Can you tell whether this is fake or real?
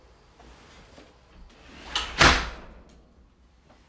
real